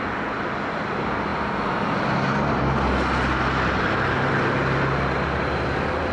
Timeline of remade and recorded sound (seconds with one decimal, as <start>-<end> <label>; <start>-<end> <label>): 0.0-6.1 recorded